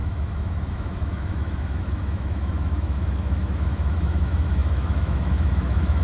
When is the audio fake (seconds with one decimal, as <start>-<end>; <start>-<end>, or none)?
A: 0.0-6.0

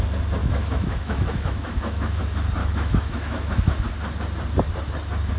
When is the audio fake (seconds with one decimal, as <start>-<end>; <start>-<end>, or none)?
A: 0.4-2.2; 2.6-3.8

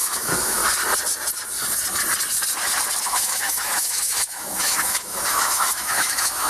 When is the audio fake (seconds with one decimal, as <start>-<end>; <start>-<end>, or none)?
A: 0.0-0.6; 3.0-6.5

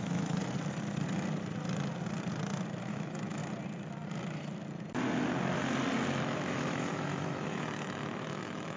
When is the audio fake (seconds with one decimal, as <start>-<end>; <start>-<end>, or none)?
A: 0.0-0.4; 2.9-3.4; 6.2-8.8

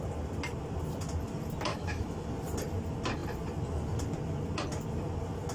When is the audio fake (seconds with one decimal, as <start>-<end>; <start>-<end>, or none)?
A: 1.7-2.3

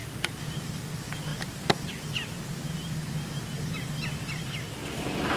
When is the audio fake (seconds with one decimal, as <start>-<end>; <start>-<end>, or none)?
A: none